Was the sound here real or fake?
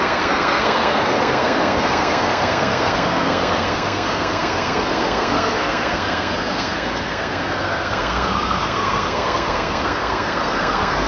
fake